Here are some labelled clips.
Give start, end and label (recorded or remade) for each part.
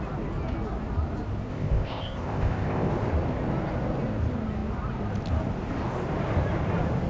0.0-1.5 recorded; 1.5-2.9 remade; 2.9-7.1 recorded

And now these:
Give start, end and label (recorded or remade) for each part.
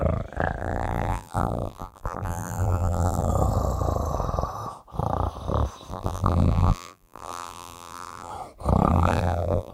0.0-0.6 recorded; 0.6-3.3 remade; 3.3-5.9 recorded; 5.9-8.3 remade; 8.3-8.9 recorded; 8.9-9.7 remade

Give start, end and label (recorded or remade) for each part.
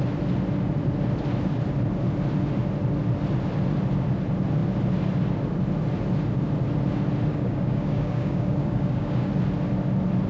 0.0-7.3 recorded; 7.3-9.3 remade; 9.3-10.3 recorded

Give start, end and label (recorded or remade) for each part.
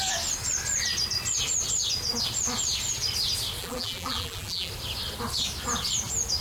0.0-3.6 recorded; 3.6-4.7 remade; 4.7-6.4 recorded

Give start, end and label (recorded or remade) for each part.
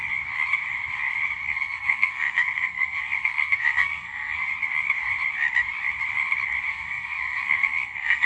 0.0-1.4 recorded; 1.4-4.4 remade; 4.4-6.7 recorded; 6.7-8.3 remade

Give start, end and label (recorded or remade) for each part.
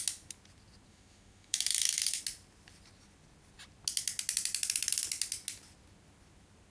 0.0-0.9 recorded; 0.9-2.2 remade; 2.2-6.7 recorded